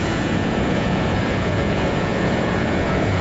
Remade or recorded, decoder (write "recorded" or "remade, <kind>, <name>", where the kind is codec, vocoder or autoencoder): remade, vocoder, Vocos